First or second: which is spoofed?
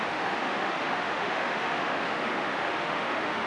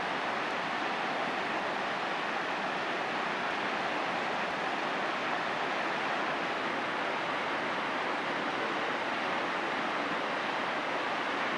first